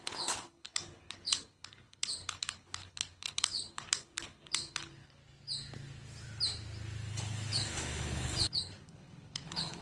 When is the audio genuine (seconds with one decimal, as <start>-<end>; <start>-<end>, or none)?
5.2-7.1